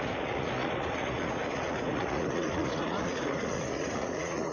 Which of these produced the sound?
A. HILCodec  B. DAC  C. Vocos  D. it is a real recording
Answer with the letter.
C